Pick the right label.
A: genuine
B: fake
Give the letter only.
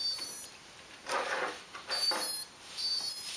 B